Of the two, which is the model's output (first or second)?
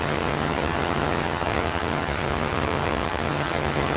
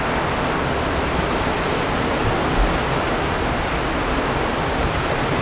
first